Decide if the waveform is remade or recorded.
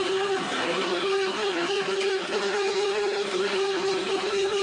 remade